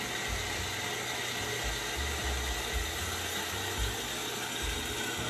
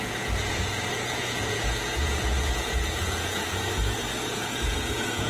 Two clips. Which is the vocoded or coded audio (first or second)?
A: second